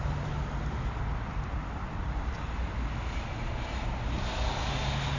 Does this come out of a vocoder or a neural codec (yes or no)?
no